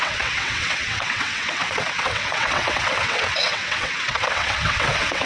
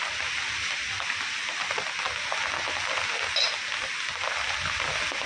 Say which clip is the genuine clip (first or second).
second